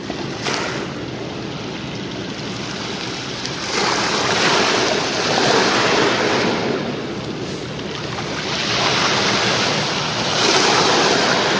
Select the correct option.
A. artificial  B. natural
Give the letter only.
B